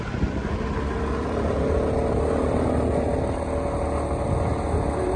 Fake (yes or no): no